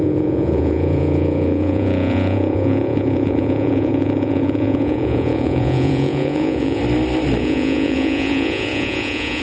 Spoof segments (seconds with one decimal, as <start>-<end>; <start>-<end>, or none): 0.0-6.8; 7.4-9.4